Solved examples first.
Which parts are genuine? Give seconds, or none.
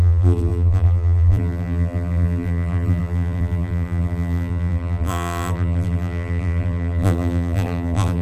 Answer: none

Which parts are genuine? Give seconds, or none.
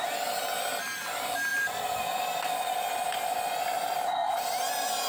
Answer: 0.0-1.5; 2.7-5.1